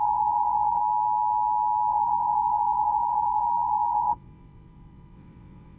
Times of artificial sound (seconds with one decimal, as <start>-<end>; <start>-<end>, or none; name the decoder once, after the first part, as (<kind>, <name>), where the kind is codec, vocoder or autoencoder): 0.0-0.8 (vocoder, WaveNeXt); 1.9-5.8

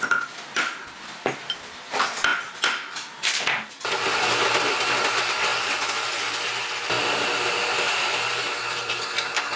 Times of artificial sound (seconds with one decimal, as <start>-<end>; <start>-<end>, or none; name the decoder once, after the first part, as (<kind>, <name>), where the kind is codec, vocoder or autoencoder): none

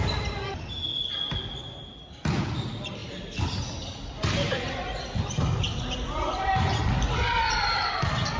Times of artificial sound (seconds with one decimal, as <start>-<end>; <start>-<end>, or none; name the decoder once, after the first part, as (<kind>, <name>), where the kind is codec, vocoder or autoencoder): none

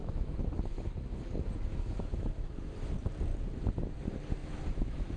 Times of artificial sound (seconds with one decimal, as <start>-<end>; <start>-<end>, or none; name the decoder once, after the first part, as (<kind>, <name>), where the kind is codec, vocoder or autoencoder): 0.0-1.2 (autoencoder, DAC-VAE); 1.7-2.9; 4.4-5.2

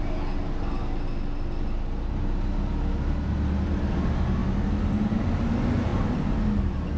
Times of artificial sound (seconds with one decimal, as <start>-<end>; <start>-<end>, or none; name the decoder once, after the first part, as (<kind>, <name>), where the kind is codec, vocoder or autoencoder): none

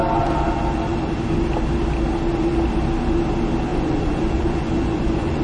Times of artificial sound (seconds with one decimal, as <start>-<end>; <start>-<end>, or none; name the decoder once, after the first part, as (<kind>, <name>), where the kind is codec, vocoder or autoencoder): 3.7-5.4 (vocoder, Vocos)

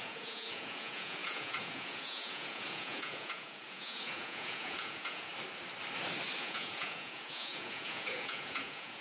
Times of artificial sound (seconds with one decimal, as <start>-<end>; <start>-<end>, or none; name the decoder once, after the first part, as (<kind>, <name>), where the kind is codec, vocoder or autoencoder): 0.0-5.3 (vocoder, Vocos); 6.4-9.0

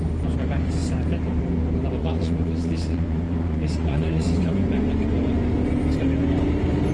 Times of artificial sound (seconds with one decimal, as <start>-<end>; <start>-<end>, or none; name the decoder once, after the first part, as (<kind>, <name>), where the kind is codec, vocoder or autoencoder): 2.0-4.8 (vocoder, Vocos)